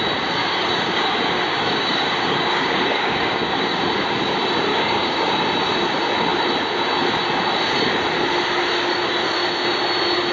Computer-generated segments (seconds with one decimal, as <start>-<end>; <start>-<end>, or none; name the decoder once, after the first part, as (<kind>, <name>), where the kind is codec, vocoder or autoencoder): 0.4-3.8 (codec, DAC); 4.7-5.3